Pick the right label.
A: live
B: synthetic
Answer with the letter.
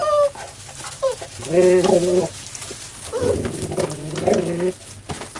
A